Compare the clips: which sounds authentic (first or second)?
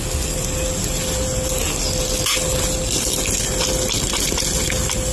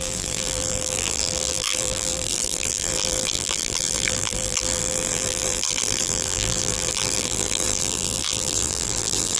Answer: first